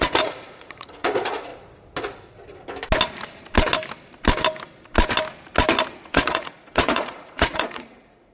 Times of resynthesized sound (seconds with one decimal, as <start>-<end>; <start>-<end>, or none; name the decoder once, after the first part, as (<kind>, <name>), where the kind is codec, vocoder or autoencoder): 0.0-1.5 (vocoder, Vocos); 5.9-8.3